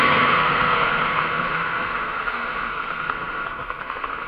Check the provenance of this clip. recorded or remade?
remade